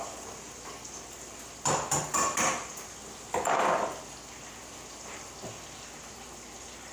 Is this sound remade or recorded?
recorded